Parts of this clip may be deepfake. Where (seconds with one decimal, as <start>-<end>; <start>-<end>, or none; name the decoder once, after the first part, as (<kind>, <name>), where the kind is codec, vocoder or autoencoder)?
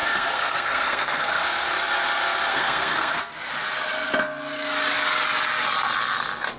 0.0-1.7 (codec, SNAC); 2.5-3.2